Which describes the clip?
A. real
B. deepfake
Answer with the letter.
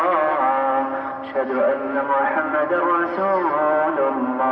A